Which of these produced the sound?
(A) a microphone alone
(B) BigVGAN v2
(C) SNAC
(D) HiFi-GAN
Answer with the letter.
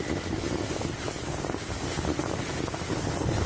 A